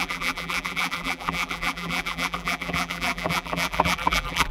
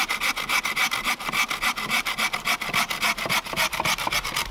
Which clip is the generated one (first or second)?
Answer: first